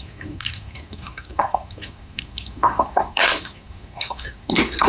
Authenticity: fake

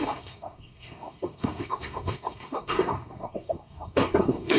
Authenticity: fake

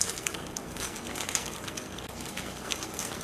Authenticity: fake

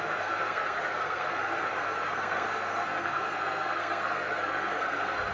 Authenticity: fake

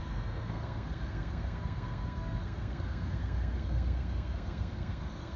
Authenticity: fake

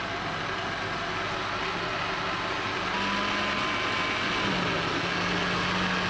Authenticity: real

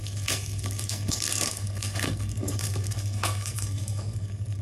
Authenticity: fake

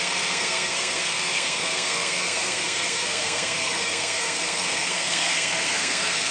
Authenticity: fake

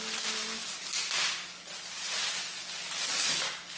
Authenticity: real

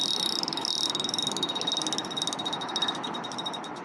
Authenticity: real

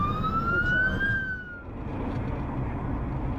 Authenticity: real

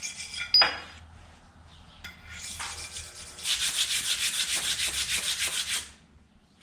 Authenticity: real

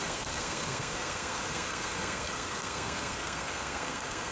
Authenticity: fake